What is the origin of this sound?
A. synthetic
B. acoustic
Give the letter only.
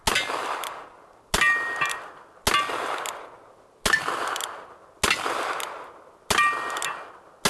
B